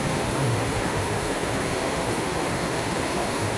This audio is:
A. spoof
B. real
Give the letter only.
A